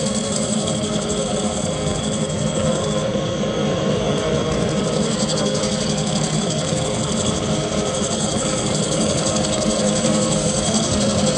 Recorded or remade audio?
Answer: remade